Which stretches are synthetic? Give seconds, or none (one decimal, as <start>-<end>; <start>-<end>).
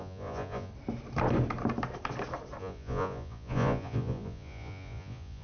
0.0-0.7; 2.6-5.4